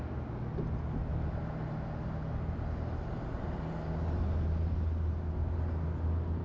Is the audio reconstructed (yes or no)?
no